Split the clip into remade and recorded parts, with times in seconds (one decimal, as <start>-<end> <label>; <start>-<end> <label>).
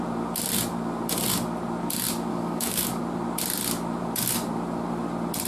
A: 0.0-2.3 recorded; 2.3-3.0 remade; 3.0-5.5 recorded